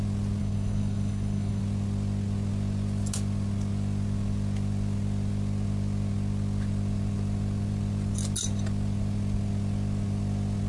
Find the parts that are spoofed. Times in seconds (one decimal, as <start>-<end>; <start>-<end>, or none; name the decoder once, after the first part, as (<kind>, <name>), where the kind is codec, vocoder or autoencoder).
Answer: 0.4-1.6 (codec, HILCodec)

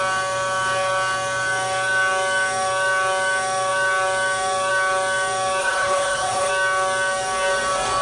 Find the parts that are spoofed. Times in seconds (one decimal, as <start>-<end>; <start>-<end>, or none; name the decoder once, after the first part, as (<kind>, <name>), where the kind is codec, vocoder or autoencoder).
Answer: 5.6-6.5 (codec, HILCodec)

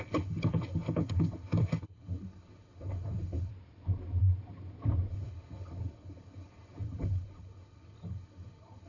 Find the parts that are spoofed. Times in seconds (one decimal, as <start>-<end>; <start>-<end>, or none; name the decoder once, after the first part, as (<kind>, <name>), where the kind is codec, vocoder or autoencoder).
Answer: 0.0-3.5 (codec, HILCodec); 5.1-8.9

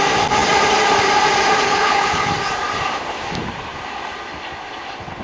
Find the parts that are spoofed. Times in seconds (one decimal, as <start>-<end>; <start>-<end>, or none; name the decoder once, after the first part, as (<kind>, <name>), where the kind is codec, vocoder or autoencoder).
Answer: 1.6-2.3 (codec, HILCodec)